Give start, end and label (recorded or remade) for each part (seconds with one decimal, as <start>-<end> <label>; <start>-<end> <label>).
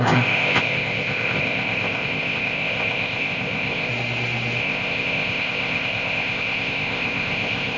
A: 0.0-3.9 remade; 3.9-4.6 recorded; 4.6-7.8 remade